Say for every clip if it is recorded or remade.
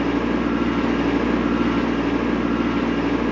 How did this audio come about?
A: recorded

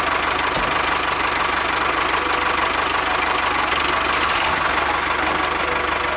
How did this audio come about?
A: recorded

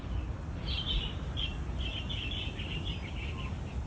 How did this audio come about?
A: recorded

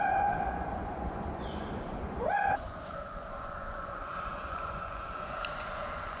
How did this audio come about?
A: remade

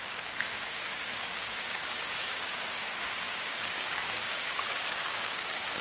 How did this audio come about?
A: remade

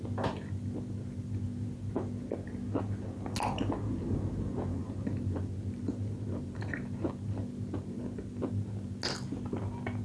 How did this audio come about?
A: recorded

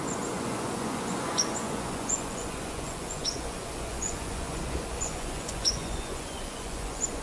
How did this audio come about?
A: remade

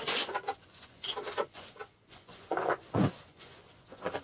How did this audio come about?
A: remade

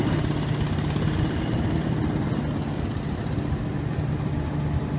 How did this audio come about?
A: recorded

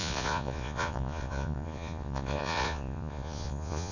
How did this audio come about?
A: remade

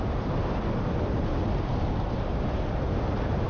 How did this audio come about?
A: recorded